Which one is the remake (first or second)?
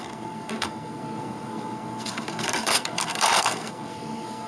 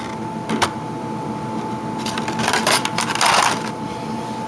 first